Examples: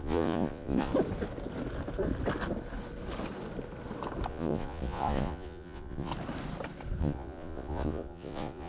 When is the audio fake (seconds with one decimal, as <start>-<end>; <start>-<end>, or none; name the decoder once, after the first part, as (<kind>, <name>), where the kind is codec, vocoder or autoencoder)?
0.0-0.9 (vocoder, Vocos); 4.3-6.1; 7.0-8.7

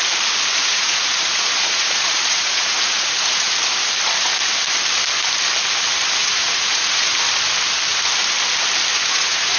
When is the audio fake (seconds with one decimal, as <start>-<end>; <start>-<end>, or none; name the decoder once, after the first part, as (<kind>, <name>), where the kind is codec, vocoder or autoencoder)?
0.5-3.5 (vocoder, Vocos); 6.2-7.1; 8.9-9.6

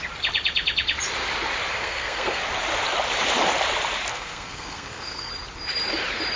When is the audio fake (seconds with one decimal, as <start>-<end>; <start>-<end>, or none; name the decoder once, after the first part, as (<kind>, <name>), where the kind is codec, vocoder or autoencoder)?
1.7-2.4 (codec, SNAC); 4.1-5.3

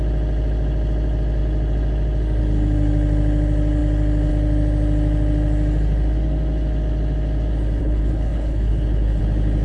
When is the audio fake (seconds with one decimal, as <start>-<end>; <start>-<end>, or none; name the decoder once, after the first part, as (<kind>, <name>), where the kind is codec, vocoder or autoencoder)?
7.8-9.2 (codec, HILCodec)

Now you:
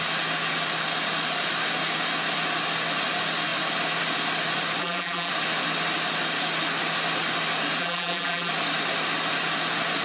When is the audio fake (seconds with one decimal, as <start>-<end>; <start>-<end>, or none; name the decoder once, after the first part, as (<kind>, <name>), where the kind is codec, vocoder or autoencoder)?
4.8-5.3 (vocoder, BigVGAN v2); 7.8-8.5

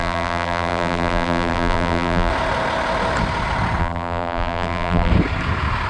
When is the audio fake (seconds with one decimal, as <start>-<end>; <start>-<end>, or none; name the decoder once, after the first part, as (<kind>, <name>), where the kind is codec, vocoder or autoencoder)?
0.0-2.3 (vocoder, BigVGAN v2); 3.8-5.1

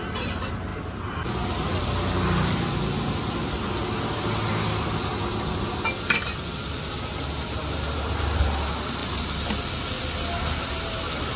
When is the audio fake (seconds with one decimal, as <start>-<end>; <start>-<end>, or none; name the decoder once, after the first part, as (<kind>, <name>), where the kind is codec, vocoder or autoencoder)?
none

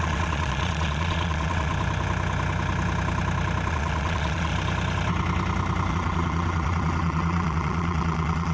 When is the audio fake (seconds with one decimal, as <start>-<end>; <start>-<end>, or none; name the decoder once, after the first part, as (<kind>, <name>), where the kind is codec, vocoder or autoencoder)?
0.0-1.7 (vocoder, Vocos); 3.7-4.5; 5.9-8.5